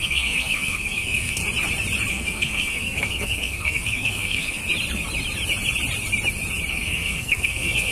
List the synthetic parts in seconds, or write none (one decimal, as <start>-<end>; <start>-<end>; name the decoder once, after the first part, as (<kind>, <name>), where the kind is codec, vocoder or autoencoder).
0.0-1.4 (codec, SNAC); 2.1-4.6; 6.7-7.9

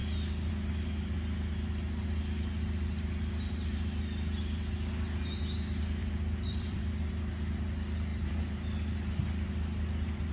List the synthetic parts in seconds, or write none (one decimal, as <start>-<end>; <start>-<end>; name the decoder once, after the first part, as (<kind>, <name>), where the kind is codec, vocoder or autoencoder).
6.0-6.8 (vocoder, BigVGAN v2); 8.1-8.9

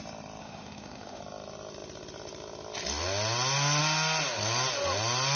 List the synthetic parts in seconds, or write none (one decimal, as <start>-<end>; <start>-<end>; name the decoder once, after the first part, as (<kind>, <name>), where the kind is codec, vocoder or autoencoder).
0.4-1.2 (autoencoder, DAC-VAE)

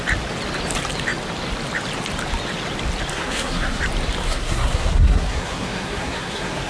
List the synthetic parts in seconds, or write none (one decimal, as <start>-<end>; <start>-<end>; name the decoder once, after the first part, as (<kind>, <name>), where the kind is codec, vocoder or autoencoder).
3.1-3.8 (codec, SNAC); 4.2-6.7

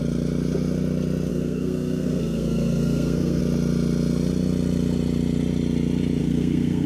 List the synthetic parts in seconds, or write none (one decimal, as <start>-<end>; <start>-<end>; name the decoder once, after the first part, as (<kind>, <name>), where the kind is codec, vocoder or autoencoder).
1.3-3.4 (codec, SNAC); 6.2-6.9

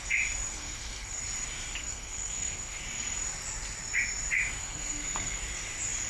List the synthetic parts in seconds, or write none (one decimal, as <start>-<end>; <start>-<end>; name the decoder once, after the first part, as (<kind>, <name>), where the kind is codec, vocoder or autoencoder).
0.5-1.2 (codec, SNAC); 1.8-2.8; 4.6-5.4

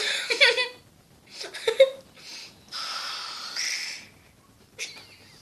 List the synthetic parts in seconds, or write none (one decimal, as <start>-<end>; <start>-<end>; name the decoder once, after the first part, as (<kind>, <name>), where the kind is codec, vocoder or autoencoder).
none

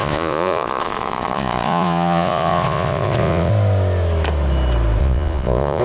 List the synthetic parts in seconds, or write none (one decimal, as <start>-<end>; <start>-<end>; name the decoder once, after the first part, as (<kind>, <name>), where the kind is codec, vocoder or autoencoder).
0.0-3.5 (vocoder, Vocos); 5.0-5.8